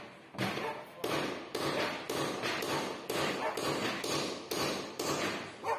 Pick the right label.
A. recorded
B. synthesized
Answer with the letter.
A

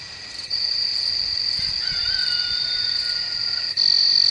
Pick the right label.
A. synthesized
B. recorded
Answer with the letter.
B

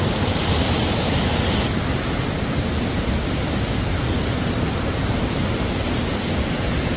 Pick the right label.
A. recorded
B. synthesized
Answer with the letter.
B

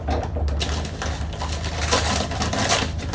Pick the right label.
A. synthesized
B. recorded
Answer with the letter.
B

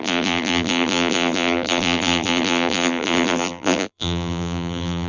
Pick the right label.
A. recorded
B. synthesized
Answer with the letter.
B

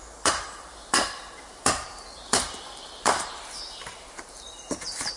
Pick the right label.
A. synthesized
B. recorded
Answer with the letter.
A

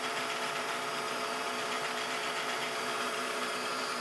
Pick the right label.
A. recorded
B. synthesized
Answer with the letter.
B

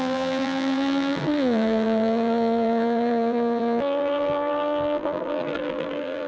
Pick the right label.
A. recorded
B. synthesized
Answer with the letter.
B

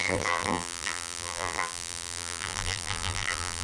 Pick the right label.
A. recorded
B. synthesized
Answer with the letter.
B